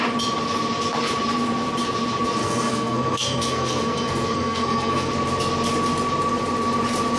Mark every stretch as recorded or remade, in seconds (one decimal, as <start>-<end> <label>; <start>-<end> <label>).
0.0-2.4 recorded; 2.4-5.1 remade; 5.1-7.2 recorded